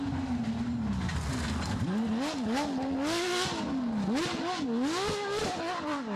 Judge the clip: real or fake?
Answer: real